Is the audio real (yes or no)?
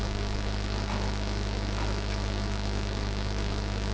no